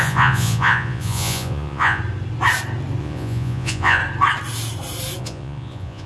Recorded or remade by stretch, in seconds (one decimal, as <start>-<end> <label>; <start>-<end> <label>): 0.0-2.0 remade; 2.0-3.0 recorded; 3.0-4.0 remade; 4.0-5.2 recorded; 5.2-6.1 remade